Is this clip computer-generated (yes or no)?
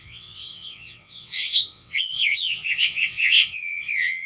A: yes